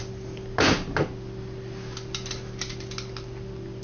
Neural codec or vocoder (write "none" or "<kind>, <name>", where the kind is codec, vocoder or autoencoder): none